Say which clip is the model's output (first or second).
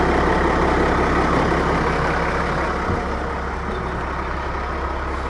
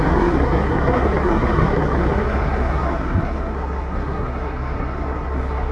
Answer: second